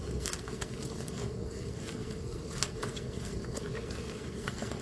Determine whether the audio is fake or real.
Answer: fake